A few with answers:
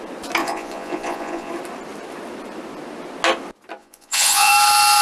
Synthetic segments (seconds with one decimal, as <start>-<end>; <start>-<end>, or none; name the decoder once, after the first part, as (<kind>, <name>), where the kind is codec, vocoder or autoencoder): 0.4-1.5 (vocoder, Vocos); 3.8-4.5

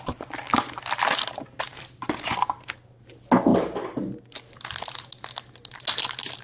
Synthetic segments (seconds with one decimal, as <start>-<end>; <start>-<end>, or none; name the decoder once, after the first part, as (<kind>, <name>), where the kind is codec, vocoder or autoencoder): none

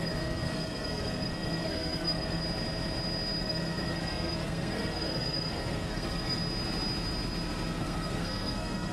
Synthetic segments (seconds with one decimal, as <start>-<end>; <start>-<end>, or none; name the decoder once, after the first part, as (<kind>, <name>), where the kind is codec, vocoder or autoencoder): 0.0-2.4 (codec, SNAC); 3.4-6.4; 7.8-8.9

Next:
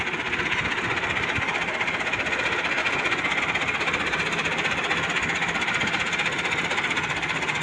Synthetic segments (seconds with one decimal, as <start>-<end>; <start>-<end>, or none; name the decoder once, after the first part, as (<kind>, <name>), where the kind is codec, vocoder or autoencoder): 2.8-3.4 (vocoder, Vocos)

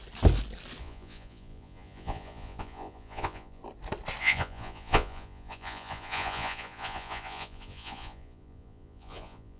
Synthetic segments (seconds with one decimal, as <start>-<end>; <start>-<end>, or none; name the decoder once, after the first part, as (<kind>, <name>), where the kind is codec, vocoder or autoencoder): 0.8-3.6 (vocoder, Vocos); 4.2-9.6

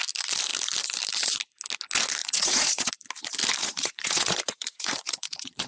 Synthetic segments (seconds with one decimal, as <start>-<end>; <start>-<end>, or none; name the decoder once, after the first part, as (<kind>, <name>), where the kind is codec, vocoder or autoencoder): 2.2-2.9 (vocoder, Vocos); 3.6-5.7